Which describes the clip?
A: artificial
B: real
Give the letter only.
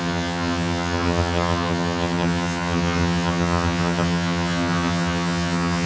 A